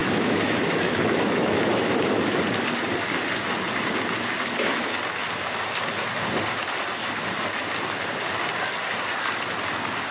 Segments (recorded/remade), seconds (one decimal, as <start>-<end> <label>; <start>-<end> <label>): 0.0-2.4 remade; 2.4-10.1 recorded